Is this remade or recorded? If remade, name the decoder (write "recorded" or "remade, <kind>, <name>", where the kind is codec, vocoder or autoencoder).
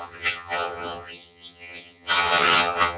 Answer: remade, vocoder, HiFi-GAN